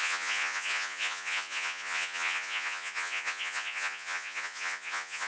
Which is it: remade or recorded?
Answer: remade